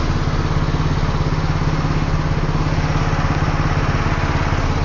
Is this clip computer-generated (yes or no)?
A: no